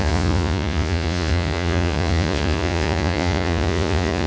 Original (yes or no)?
no